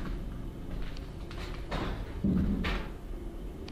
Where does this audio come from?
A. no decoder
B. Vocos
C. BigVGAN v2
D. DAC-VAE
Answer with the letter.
A